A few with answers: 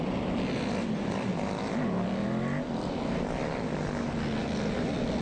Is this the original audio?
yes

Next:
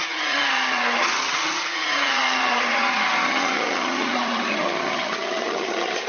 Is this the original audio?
no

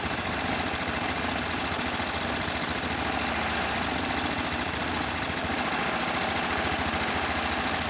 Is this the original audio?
yes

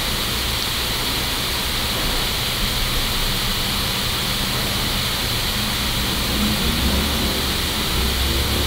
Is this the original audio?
yes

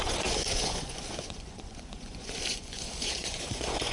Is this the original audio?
no